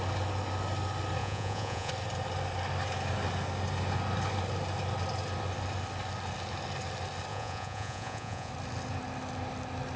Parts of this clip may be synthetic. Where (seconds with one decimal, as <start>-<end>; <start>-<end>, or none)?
1.2-1.9; 7.3-8.5